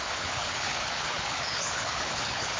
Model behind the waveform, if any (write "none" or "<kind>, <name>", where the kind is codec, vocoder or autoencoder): codec, HILCodec